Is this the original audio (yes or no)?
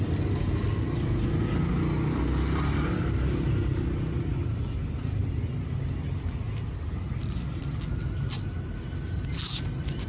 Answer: yes